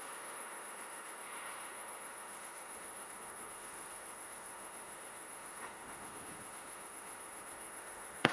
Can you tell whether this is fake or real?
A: fake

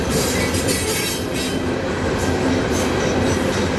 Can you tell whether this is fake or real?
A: real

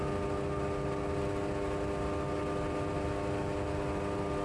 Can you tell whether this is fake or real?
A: real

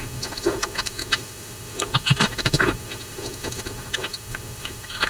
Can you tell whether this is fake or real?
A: fake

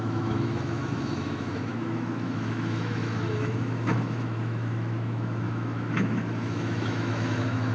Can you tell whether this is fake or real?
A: fake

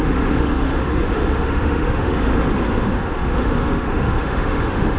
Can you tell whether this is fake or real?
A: fake